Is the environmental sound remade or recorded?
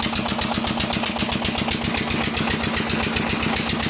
recorded